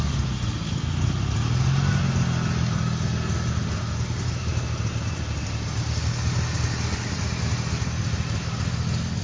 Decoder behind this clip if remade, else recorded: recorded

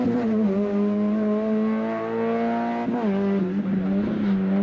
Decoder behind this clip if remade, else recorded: recorded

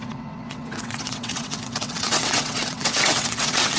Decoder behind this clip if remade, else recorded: remade, vocoder, WaveNeXt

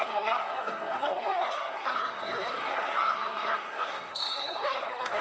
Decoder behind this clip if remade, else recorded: remade, codec, SNAC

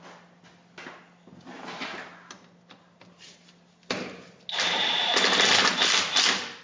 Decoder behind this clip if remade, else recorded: recorded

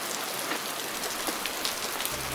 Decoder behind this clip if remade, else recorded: recorded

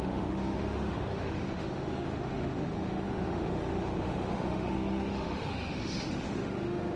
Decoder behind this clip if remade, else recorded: remade, autoencoder, DAC-VAE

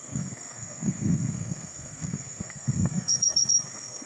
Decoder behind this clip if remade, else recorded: remade, codec, SNAC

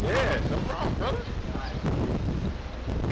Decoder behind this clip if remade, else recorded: recorded